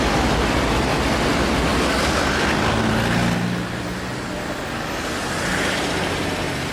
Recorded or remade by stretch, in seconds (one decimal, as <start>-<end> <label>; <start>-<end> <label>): 0.0-6.7 recorded